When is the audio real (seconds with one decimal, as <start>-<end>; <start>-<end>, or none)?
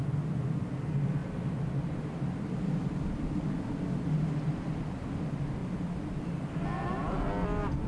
0.0-5.6; 6.2-7.9